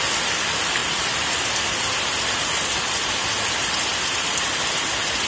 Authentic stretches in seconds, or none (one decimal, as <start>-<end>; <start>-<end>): 0.0-5.3